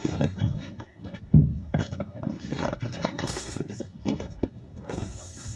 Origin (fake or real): fake